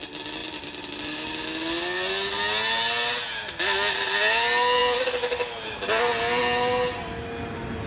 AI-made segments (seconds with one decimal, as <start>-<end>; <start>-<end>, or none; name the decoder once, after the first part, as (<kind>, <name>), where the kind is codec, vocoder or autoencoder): none